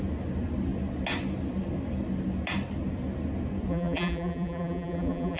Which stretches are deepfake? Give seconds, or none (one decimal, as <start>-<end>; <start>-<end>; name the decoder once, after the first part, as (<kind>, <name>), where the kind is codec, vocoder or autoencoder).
3.7-5.4 (vocoder, BigVGAN v2)

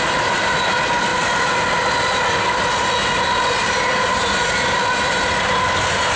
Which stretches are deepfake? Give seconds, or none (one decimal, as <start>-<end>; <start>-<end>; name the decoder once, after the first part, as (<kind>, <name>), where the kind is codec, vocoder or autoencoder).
none

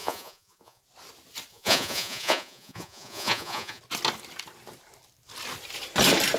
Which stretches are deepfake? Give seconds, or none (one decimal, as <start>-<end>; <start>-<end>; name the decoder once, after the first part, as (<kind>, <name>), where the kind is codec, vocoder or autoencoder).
0.0-0.8 (vocoder, Vocos); 1.5-3.8

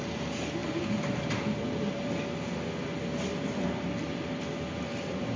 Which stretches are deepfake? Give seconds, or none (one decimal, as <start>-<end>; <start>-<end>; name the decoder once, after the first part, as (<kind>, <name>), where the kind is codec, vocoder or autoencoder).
0.6-2.1 (vocoder, BigVGAN v2)